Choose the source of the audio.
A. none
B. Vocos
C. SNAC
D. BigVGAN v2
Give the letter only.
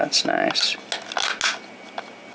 A